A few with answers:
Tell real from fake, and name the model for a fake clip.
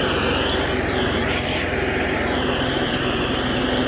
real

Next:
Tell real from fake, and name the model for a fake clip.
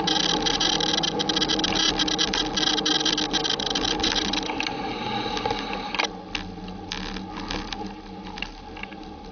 real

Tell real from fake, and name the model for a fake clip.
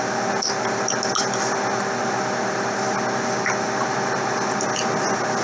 real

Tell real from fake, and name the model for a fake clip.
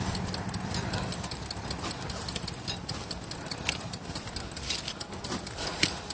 real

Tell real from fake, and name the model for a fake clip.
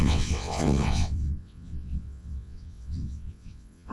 fake, vocoder, WaveNeXt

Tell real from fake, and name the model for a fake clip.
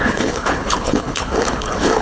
fake, codec, HILCodec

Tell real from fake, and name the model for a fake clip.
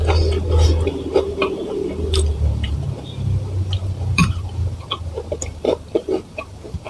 fake, vocoder, BigVGAN v2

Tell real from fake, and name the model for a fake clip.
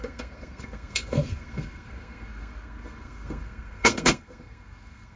fake, codec, SNAC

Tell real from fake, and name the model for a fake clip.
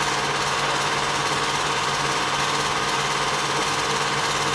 real